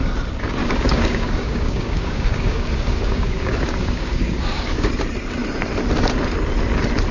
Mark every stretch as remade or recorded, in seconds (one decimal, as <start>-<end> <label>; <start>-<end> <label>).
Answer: 0.0-0.6 recorded; 0.6-4.9 remade; 4.9-7.1 recorded